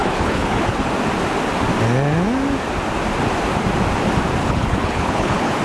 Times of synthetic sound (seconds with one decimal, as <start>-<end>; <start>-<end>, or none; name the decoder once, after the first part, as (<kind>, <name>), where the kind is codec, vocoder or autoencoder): 0.0-0.9 (codec, HILCodec); 4.4-5.6